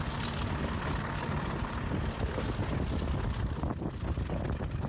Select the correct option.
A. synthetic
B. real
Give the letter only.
B